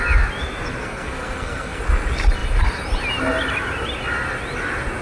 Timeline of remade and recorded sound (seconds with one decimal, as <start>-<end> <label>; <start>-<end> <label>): 0.0-0.8 recorded; 0.8-1.8 remade; 1.8-5.0 recorded